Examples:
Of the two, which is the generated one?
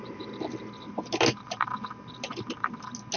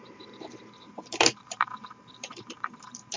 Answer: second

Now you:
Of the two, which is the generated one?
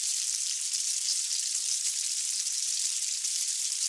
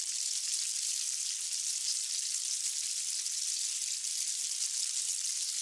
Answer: first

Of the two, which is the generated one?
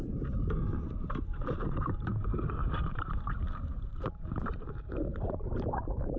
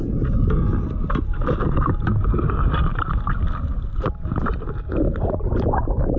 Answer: first